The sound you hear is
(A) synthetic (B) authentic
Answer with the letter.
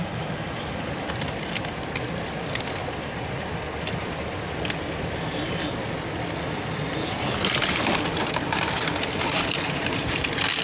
B